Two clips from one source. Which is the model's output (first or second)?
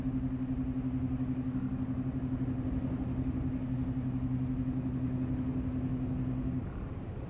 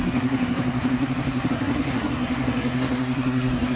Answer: second